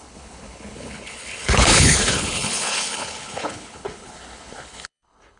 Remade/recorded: remade